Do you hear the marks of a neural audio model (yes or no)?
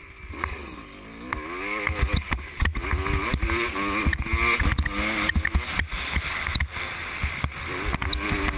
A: no